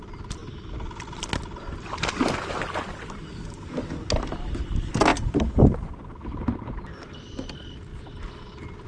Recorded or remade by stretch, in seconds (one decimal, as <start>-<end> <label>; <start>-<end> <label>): 0.0-8.9 recorded